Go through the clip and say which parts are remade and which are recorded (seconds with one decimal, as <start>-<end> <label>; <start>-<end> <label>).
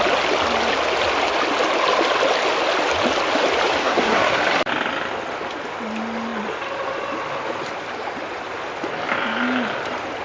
0.0-3.8 recorded; 3.8-4.4 remade; 4.4-10.2 recorded